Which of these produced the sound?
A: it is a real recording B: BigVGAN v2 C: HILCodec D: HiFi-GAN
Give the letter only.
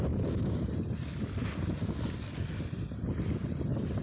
A